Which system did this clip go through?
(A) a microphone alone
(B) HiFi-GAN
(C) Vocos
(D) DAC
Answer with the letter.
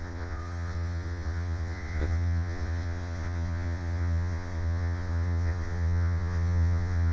C